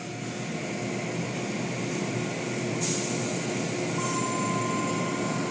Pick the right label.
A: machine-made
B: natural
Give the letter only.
B